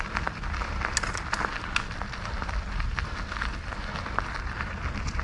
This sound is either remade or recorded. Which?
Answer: recorded